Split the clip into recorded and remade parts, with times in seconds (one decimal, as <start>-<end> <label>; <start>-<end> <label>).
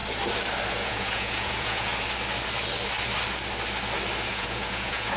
0.0-0.7 recorded; 0.7-1.9 remade; 1.9-4.3 recorded; 4.3-5.2 remade